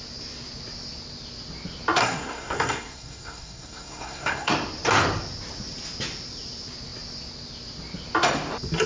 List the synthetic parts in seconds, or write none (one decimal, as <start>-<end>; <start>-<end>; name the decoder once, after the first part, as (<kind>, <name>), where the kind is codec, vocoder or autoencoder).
2.0-4.5 (codec, SNAC)